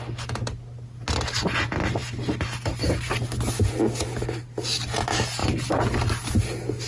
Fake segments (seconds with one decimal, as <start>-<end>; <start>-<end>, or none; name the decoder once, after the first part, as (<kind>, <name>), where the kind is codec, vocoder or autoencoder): none